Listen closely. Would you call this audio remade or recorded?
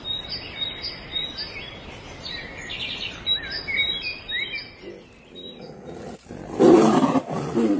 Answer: recorded